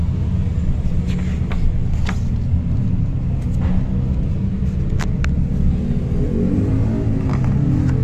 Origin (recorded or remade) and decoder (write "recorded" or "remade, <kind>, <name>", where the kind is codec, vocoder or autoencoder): recorded